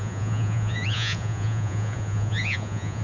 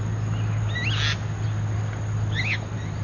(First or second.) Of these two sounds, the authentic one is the second